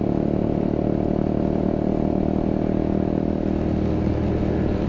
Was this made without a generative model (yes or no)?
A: yes